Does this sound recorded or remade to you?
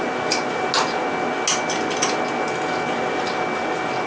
recorded